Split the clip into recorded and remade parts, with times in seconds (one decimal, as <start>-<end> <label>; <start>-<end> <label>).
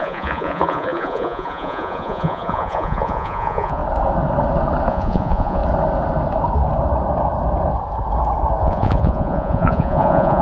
0.0-3.8 remade; 3.8-4.9 recorded; 4.9-5.6 remade; 5.6-8.6 recorded; 8.6-10.4 remade